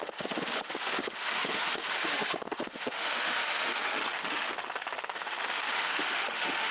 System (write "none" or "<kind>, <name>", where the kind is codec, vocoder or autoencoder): autoencoder, DAC-VAE